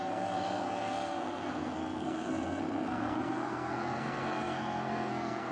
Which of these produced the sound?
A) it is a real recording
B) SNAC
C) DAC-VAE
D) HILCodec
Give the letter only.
B